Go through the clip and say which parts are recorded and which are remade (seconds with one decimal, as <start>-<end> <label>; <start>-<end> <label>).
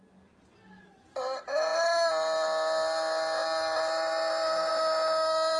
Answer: 0.0-5.6 recorded